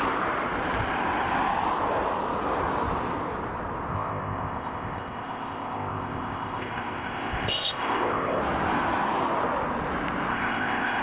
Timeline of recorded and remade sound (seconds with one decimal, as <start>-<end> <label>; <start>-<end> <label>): 0.0-3.9 recorded; 3.9-8.4 remade; 8.4-10.3 recorded; 10.3-11.0 remade